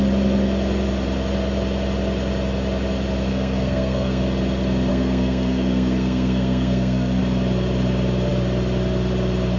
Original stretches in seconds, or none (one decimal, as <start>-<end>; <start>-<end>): 0.0-3.3; 4.2-4.9; 7.2-9.6